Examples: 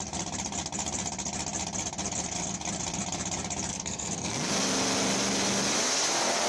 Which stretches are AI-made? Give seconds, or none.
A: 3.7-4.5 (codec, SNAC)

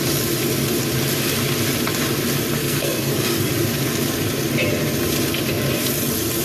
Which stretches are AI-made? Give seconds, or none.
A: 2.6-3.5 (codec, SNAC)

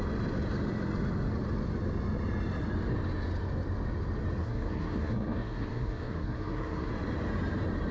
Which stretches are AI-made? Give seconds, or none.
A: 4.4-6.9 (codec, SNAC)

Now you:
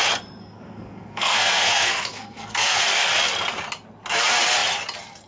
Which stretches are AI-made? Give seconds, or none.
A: 0.4-2.8 (codec, SNAC)

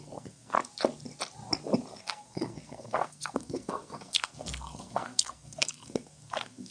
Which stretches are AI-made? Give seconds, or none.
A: 0.0-0.6 (codec, SNAC); 2.0-6.7